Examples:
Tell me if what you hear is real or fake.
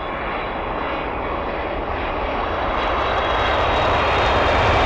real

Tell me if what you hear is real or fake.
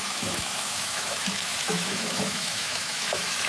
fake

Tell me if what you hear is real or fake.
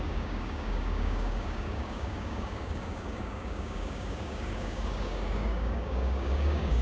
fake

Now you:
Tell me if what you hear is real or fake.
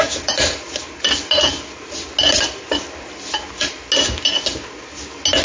real